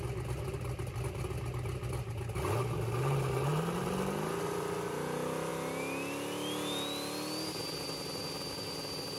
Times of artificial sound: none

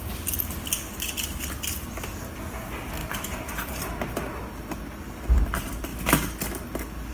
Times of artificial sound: 3.0-3.8 (vocoder, BigVGAN v2)

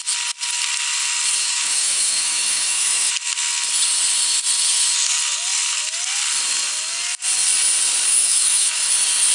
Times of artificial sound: 1.4-3.1 (autoencoder, DAC-VAE); 8.1-8.8